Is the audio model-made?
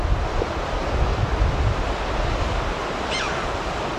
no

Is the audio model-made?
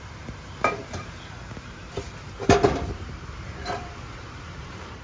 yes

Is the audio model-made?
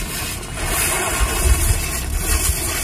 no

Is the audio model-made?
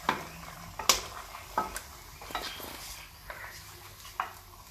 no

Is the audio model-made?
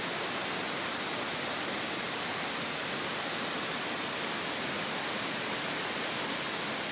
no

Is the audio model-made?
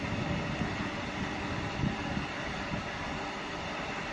yes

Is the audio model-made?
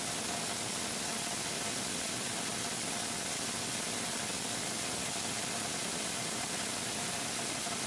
yes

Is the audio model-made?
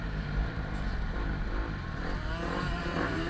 no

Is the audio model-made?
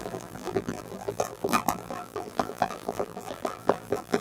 yes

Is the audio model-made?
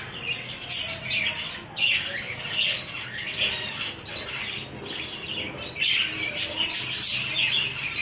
no